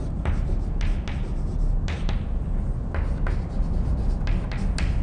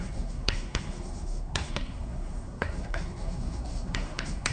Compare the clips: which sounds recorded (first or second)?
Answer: first